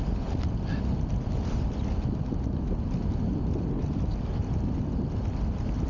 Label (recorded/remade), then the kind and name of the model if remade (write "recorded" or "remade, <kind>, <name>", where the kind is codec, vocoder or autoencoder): recorded